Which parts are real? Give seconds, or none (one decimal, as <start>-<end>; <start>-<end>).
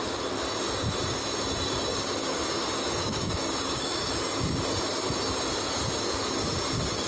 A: 0.0-1.9; 2.4-3.0; 4.1-7.1